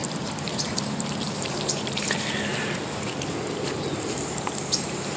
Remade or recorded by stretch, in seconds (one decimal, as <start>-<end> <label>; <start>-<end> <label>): 0.0-2.5 remade; 2.5-5.2 recorded